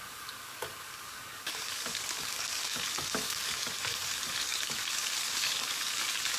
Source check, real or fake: fake